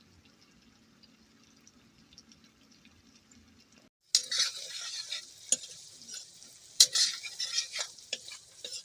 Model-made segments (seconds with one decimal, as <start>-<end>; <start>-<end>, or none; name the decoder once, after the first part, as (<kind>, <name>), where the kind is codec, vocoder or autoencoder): 4.2-5.3 (vocoder, BigVGAN v2); 5.7-8.8